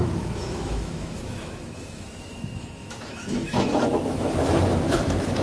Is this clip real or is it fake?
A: fake